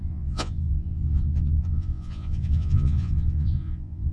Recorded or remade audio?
remade